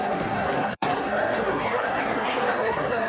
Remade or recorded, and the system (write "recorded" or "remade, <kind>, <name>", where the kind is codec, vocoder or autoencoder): remade, codec, SNAC